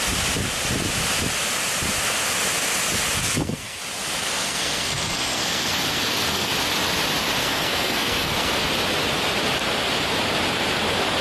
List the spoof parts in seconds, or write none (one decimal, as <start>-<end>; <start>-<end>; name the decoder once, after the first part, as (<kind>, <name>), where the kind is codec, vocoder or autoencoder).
3.2-3.8 (codec, SNAC); 4.2-6.5; 7.4-8.6